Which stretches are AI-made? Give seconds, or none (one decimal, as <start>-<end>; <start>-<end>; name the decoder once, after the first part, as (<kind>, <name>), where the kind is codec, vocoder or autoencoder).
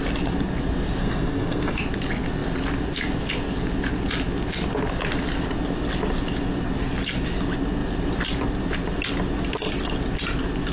1.0-1.8 (codec, SNAC)